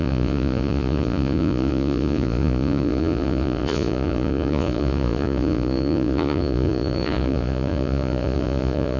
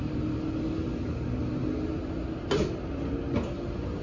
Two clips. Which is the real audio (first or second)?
second